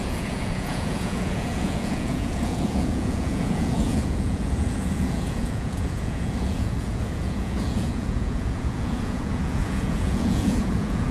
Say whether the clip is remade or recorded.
remade